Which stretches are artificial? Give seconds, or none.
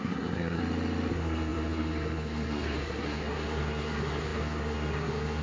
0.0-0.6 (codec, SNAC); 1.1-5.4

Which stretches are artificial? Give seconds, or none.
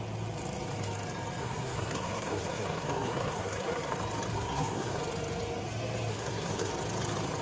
1.4-3.9 (codec, SNAC); 4.3-5.0; 6.1-6.7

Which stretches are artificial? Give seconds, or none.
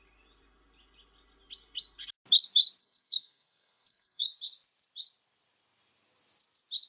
2.8-4.4 (codec, SNAC)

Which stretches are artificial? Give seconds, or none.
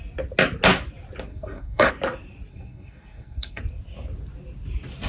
1.3-1.9 (codec, SNAC); 2.5-3.6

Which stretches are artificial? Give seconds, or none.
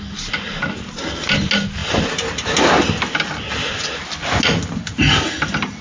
none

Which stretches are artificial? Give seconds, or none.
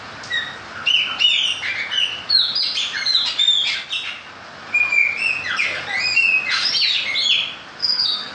7.8-8.3 (codec, SNAC)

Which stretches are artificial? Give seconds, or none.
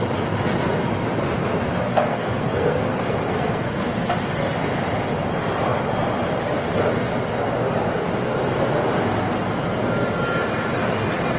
1.9-3.9 (codec, SNAC)